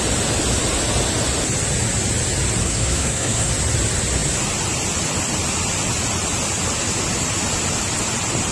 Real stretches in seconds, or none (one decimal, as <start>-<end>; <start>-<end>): 0.0-2.6; 3.5-8.5